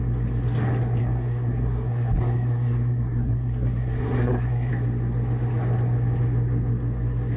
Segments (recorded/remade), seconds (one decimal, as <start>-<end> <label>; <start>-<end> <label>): 0.0-1.0 recorded; 1.0-4.7 remade; 4.7-7.4 recorded